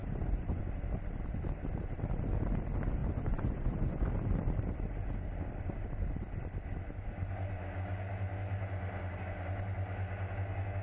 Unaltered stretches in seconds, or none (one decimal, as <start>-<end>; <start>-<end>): 0.6-3.0; 4.1-10.8